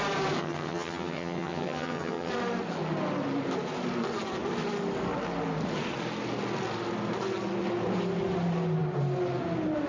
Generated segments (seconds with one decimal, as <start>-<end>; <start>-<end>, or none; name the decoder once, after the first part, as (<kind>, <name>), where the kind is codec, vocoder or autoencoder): 0.4-2.3 (vocoder, HiFi-GAN)